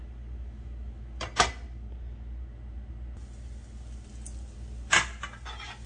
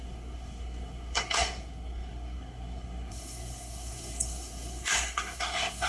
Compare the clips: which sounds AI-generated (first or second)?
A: second